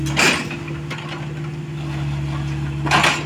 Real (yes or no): yes